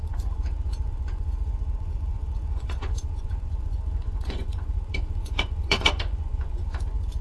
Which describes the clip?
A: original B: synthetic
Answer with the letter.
B